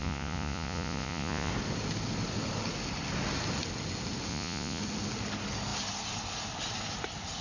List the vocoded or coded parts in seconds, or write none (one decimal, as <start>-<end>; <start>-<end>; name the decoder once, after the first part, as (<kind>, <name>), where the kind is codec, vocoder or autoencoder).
0.0-1.5 (vocoder, Vocos); 4.3-4.8